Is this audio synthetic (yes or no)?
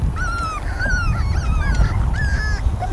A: no